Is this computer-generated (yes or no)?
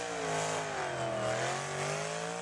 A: no